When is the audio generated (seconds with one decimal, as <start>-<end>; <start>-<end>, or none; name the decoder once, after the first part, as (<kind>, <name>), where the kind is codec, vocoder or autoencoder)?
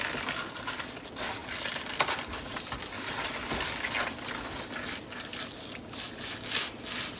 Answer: none